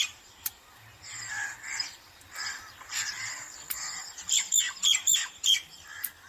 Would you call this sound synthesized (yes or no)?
yes